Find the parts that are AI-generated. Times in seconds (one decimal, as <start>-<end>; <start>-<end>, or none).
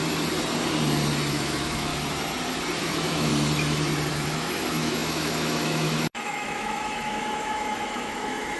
1.3-1.9; 2.8-3.3; 4.1-8.6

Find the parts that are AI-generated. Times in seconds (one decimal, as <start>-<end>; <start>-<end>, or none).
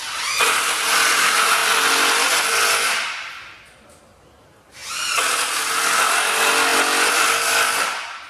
none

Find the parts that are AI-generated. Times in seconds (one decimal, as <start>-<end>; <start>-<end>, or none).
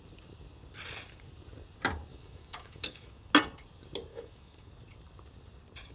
2.1-3.3; 4.1-4.7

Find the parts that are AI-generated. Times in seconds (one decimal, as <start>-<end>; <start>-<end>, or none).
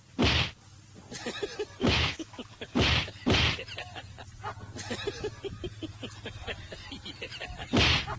1.8-2.3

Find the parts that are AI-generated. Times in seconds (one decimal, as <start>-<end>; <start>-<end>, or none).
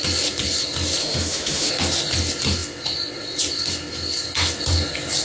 1.0-1.7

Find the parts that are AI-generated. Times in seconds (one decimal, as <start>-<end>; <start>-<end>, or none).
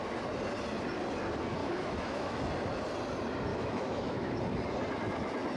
1.6-2.4; 3.5-4.4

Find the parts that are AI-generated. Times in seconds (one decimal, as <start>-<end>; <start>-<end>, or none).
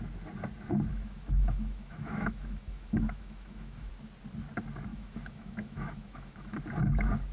0.9-3.9; 4.9-6.6